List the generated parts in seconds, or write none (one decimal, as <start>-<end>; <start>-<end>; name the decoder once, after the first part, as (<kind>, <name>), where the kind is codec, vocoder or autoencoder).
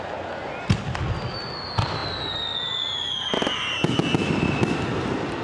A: none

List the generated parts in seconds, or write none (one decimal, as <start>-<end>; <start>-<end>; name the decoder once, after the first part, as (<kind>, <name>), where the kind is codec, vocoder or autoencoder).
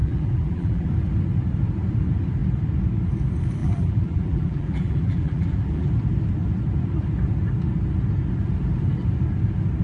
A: 0.0-0.9 (vocoder, BigVGAN v2); 3.6-5.9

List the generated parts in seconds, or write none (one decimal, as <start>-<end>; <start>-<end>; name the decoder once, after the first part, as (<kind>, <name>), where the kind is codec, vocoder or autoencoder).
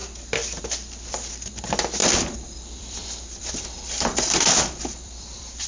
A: 2.0-5.7 (vocoder, BigVGAN v2)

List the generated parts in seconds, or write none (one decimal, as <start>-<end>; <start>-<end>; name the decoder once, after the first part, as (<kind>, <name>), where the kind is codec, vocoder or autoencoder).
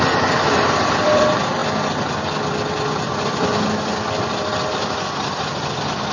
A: 0.0-1.6 (vocoder, BigVGAN v2); 5.3-6.1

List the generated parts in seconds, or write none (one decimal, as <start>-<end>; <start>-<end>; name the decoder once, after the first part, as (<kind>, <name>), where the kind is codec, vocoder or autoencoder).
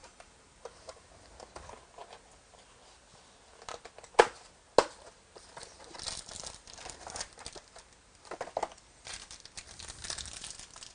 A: 0.0-1.1 (vocoder, BigVGAN v2)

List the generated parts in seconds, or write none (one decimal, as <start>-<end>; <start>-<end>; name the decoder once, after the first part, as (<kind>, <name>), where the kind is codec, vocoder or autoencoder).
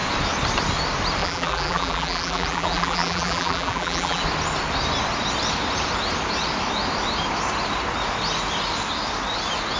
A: 1.2-4.2 (vocoder, BigVGAN v2)